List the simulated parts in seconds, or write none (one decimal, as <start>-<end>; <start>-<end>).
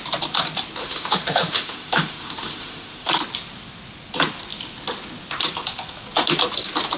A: 0.8-3.1